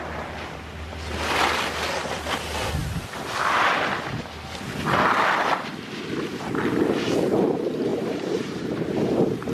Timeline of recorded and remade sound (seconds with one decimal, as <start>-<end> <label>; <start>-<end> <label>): 0.0-7.9 recorded; 7.9-9.5 remade